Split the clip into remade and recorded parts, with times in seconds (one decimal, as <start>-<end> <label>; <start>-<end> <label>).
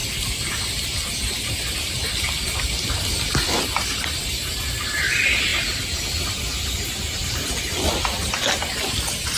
0.0-5.5 recorded; 5.5-6.7 remade; 6.7-9.4 recorded